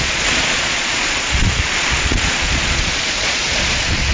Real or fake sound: fake